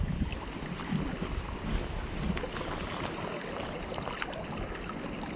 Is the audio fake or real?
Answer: real